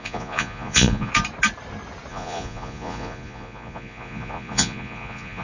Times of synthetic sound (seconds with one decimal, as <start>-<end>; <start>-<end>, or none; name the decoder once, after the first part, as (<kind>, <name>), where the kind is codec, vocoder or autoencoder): 0.0-1.1 (vocoder, Vocos); 2.1-5.4